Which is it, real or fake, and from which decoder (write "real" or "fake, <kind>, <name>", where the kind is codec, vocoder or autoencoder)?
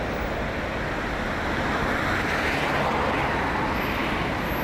real